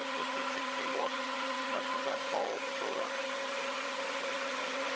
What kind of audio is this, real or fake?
fake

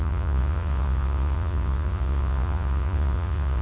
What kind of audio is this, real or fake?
fake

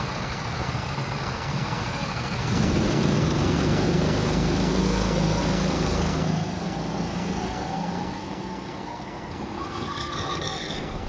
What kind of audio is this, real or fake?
fake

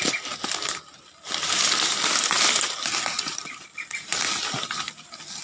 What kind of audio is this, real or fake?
real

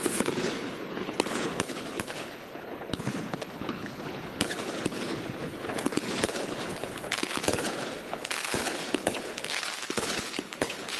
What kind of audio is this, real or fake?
fake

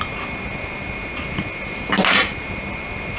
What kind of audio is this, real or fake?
real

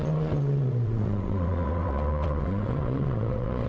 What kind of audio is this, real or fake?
fake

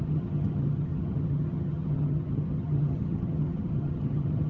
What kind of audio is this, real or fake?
fake